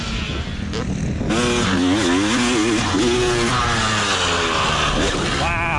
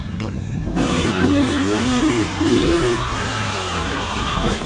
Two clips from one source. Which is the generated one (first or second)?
second